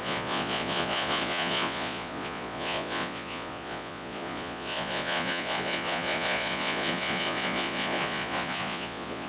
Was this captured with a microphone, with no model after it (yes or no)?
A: no